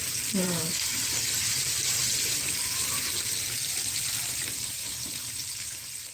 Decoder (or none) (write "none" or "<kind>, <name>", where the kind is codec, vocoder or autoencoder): vocoder, BigVGAN v2